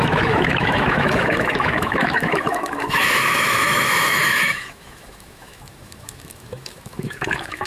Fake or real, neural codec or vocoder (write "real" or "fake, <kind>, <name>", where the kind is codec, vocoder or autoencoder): fake, autoencoder, DAC-VAE